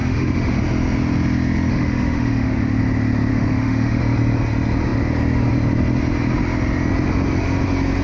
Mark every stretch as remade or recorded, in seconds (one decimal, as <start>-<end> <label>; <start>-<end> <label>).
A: 0.0-0.6 remade; 0.6-1.7 recorded; 1.7-2.8 remade; 2.8-3.3 recorded; 3.3-4.0 remade; 4.0-8.0 recorded